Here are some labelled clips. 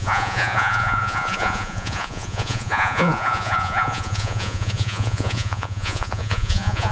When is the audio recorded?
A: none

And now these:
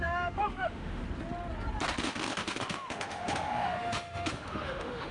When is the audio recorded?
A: 1.0-2.0

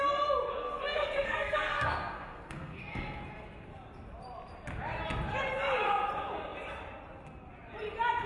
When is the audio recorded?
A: 0.0-0.6; 3.2-8.3

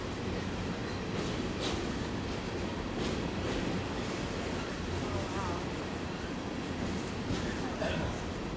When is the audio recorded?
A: 0.0-0.8; 4.4-8.6

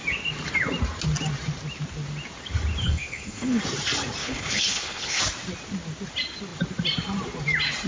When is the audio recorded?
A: 0.0-2.8; 3.6-4.2; 5.2-7.9

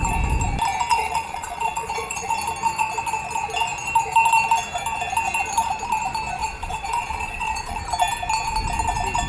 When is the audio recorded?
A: 0.0-0.9; 2.3-6.4; 7.8-9.3

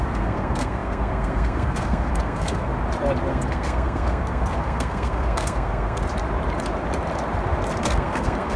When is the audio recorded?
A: 2.7-3.3; 6.0-7.8